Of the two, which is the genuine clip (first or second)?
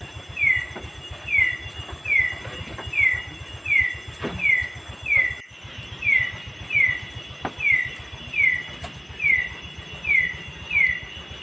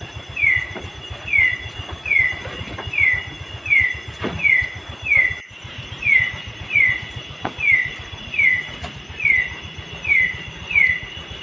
first